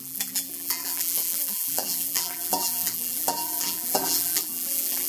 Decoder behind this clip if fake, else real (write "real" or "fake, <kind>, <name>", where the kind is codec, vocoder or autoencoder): fake, vocoder, BigVGAN v2